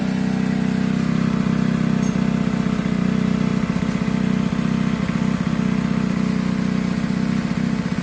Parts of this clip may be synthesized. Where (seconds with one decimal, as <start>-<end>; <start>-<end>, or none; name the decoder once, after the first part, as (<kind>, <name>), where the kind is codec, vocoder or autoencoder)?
none